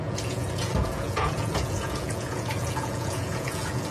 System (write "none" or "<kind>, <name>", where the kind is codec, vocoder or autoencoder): vocoder, Vocos